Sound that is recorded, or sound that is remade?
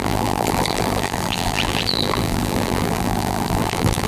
remade